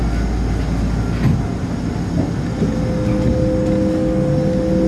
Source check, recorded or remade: recorded